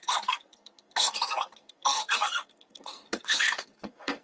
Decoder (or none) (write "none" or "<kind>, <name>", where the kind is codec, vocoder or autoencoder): codec, SNAC